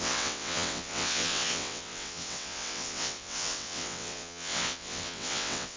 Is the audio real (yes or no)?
no